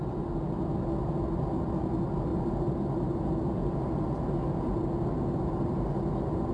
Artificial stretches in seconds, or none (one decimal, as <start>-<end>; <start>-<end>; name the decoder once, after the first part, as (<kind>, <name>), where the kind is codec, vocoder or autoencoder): 2.3-3.2 (vocoder, BigVGAN v2)